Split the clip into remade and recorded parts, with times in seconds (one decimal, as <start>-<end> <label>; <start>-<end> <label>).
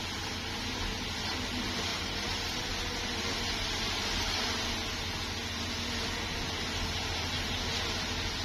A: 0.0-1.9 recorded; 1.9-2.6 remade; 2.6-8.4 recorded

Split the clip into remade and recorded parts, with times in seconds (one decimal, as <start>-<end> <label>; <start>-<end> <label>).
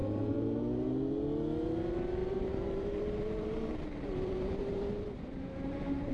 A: 0.0-0.6 remade; 0.6-2.2 recorded; 2.2-6.1 remade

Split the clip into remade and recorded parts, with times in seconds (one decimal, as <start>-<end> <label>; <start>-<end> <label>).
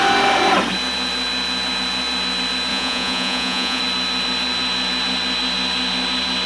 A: 0.0-2.7 recorded; 2.7-3.8 remade; 3.8-6.5 recorded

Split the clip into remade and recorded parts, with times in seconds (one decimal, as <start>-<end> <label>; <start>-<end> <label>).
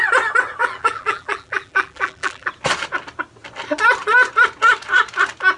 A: 0.0-0.6 recorded; 0.6-2.5 remade; 2.5-5.6 recorded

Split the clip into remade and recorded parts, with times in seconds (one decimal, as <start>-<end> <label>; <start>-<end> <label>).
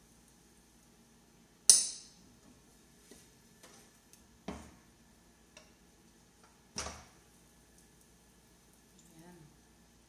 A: 0.0-2.7 recorded; 2.7-4.1 remade; 4.1-10.1 recorded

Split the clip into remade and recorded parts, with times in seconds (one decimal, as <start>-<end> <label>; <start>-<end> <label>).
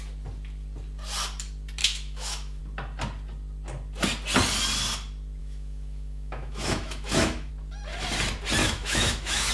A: 0.0-1.8 recorded; 1.8-2.6 remade; 2.6-5.4 recorded; 5.4-7.5 remade; 7.5-8.6 recorded; 8.6-9.5 remade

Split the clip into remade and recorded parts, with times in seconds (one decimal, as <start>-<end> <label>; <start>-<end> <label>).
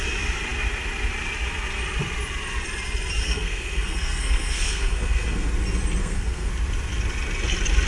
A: 0.0-3.2 recorded; 3.2-5.5 remade; 5.5-6.0 recorded; 6.0-6.5 remade; 6.5-7.9 recorded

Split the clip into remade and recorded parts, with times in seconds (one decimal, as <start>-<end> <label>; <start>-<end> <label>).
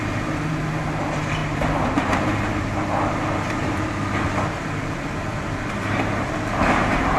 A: 0.0-7.2 remade